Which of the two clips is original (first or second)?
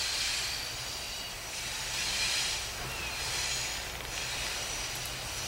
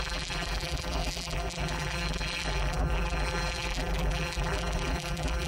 first